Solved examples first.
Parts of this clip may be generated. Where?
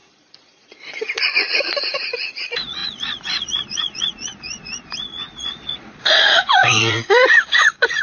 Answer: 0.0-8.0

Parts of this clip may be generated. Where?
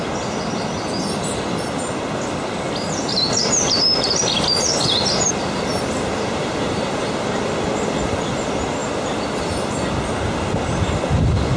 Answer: none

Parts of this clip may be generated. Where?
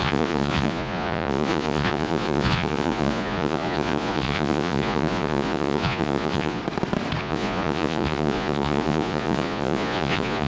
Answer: 0.0-6.6; 7.2-10.5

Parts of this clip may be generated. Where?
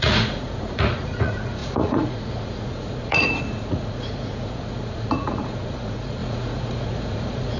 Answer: 0.0-7.6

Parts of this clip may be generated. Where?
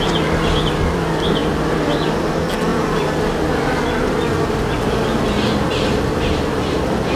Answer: none